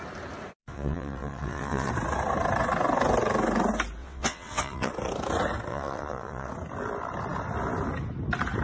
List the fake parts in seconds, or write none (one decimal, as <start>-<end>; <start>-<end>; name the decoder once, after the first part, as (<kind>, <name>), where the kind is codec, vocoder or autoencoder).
0.6-1.9 (vocoder, WaveNeXt); 4.0-4.9; 5.7-6.5